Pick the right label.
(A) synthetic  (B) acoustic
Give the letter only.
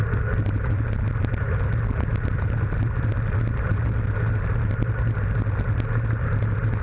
B